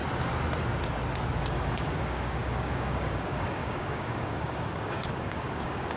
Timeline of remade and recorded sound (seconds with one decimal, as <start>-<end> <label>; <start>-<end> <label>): 0.0-1.4 recorded; 1.4-6.0 remade